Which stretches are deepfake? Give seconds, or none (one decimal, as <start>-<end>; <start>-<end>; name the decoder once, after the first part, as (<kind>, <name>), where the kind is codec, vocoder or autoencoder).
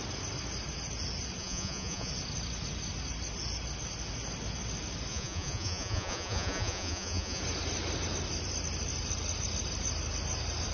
1.4-2.1 (vocoder, Vocos); 5.1-7.4